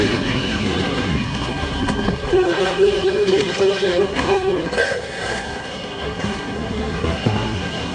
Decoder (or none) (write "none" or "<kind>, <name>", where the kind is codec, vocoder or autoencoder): codec, SNAC